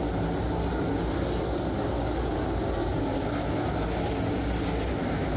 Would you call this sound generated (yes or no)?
no